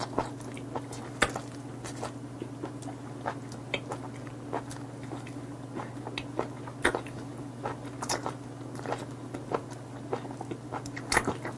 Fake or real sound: real